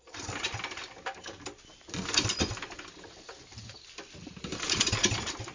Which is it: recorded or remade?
recorded